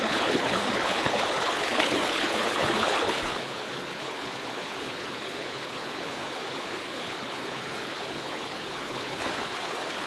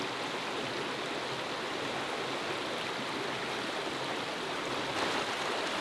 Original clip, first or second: second